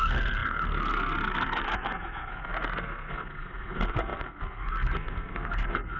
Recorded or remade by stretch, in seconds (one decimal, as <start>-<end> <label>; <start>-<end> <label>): 0.0-6.0 remade